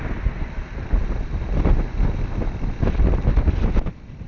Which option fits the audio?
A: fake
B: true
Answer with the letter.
B